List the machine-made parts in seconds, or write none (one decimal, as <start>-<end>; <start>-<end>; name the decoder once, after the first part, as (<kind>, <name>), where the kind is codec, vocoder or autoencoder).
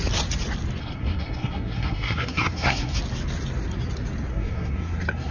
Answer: 0.8-3.0 (codec, SNAC); 4.3-5.3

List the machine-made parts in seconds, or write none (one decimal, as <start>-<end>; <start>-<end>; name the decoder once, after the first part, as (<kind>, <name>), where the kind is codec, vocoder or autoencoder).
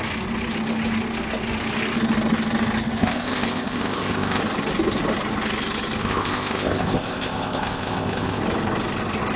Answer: 3.0-4.4 (codec, ZipCodec); 6.0-8.4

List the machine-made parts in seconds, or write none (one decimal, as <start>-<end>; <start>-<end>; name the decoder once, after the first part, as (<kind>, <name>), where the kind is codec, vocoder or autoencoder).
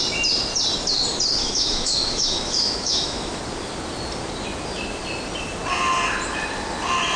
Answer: 1.4-3.4 (autoencoder, DAC-VAE)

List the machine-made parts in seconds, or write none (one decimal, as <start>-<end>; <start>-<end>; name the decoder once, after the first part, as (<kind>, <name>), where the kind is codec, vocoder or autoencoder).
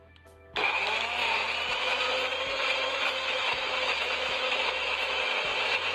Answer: 0.0-1.2 (autoencoder, DAC-VAE); 3.0-5.9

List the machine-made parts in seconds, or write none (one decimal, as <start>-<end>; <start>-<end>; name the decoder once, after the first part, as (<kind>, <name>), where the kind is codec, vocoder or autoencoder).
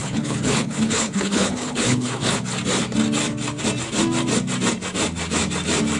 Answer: 0.0-2.4 (codec, HILCodec)